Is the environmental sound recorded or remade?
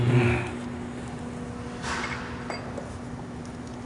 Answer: recorded